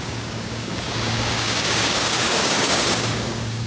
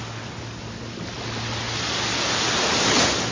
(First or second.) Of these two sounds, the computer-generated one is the first